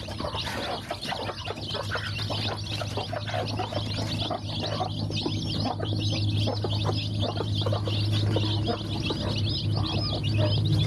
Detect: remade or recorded recorded